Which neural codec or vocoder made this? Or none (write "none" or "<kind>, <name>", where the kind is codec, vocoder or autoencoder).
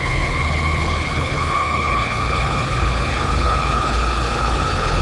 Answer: codec, HILCodec